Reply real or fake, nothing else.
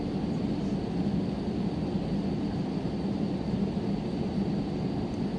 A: real